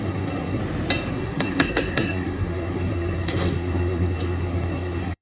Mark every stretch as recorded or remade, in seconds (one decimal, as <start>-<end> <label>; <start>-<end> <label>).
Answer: 0.0-0.6 remade; 0.6-1.1 recorded; 1.1-5.2 remade